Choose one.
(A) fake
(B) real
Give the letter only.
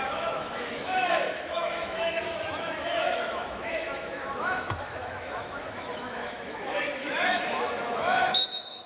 A